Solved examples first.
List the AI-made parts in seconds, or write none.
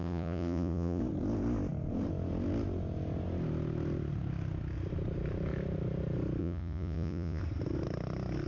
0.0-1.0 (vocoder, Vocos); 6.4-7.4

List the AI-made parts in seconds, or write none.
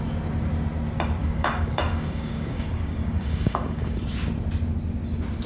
1.2-4.0 (codec, DAC)